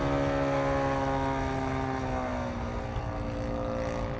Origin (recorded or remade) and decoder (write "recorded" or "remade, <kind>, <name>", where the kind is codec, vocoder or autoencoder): recorded